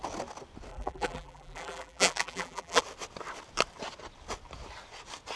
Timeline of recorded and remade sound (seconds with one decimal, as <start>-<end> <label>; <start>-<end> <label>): 0.0-0.7 recorded; 0.7-2.8 remade; 2.8-5.4 recorded